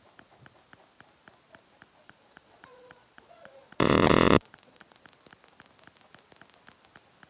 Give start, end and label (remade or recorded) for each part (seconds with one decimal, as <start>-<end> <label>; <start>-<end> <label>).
0.0-2.0 recorded; 2.0-5.0 remade; 5.0-7.3 recorded